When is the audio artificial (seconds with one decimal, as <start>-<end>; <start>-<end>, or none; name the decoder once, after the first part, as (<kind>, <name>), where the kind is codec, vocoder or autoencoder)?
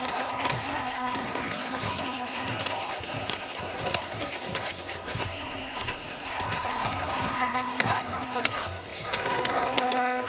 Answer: 0.0-10.3 (codec, SNAC)